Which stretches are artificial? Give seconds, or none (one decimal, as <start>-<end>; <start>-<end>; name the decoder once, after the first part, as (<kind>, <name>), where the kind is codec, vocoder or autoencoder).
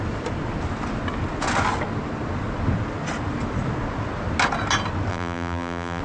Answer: 5.1-6.0 (vocoder, BigVGAN v2)